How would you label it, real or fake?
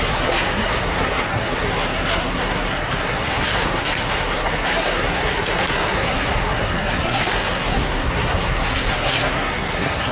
fake